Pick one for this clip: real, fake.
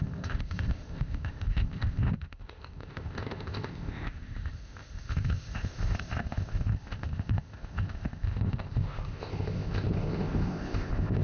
fake